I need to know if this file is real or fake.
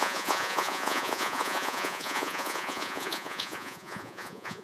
fake